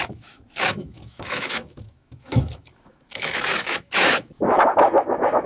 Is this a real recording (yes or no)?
no